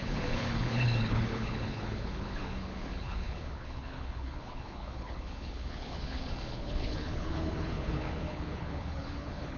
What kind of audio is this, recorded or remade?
remade